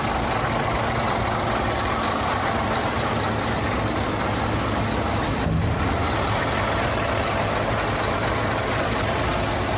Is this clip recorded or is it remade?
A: recorded